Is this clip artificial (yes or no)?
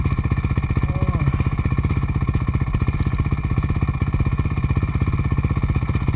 no